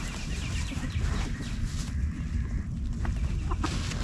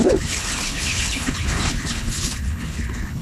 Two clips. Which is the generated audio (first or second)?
second